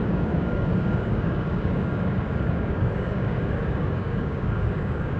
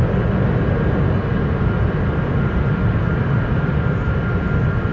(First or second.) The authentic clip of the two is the second